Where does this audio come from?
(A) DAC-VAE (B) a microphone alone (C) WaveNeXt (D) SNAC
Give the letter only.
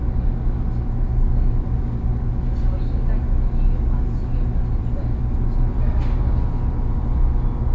B